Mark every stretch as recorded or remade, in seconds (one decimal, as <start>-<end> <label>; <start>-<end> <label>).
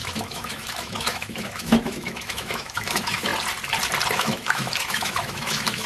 0.0-3.3 remade; 3.3-4.1 recorded; 4.1-5.9 remade